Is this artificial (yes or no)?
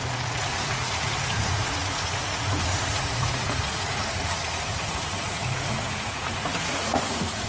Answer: yes